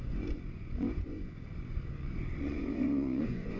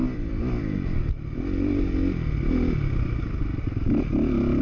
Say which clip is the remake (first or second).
first